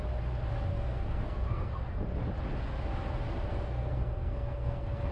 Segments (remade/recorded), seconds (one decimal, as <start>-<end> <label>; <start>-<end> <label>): 0.0-0.7 recorded; 0.7-2.0 remade; 2.0-3.5 recorded; 3.5-5.1 remade